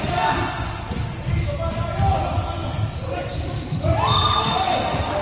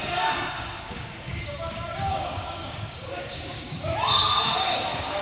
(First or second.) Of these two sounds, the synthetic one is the second